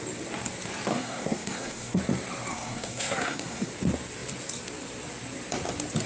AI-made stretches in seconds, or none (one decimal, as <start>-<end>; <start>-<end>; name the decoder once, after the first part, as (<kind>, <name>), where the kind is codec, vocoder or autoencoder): 0.9-2.0 (codec, SNAC); 2.5-3.7